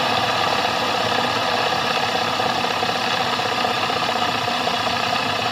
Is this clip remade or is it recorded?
remade